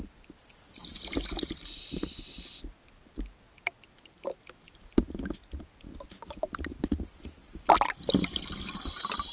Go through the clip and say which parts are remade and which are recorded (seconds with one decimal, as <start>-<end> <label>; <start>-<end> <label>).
0.0-9.3 recorded